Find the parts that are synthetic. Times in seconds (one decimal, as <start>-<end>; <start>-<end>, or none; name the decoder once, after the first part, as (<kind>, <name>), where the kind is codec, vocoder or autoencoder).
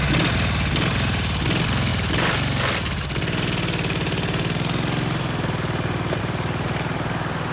none